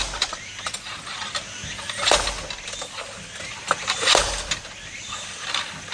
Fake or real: real